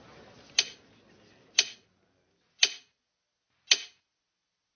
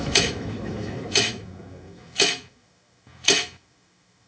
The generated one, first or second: second